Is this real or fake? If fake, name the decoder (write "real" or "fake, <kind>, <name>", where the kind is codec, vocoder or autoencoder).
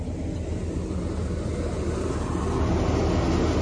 real